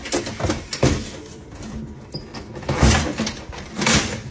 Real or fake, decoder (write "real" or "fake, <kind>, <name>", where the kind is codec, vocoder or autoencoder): real